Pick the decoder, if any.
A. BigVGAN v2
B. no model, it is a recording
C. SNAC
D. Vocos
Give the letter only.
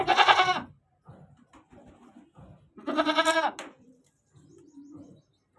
B